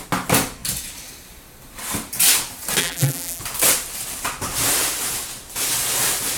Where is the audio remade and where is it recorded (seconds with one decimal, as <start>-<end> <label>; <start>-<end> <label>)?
0.0-2.8 recorded; 2.8-3.4 remade; 3.4-6.4 recorded

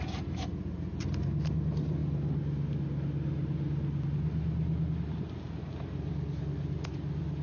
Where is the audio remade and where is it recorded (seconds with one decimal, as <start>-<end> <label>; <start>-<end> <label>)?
0.0-7.4 recorded

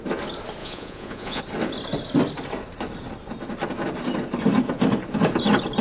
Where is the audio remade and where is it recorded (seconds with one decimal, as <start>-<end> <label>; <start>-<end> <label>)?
0.0-0.6 recorded; 0.6-1.4 remade; 1.4-5.8 recorded